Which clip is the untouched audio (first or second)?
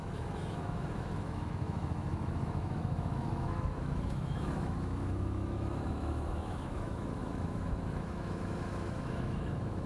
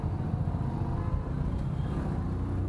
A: second